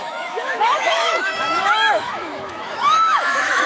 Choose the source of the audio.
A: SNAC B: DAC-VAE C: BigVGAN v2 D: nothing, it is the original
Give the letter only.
B